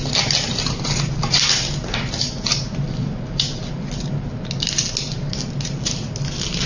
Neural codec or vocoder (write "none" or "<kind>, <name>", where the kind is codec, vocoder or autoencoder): none